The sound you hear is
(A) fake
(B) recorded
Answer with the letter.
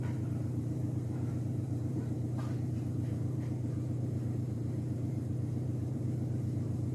A